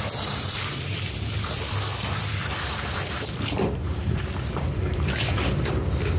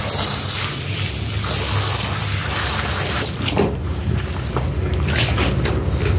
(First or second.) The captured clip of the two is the second